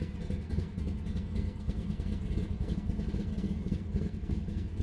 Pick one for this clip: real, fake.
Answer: fake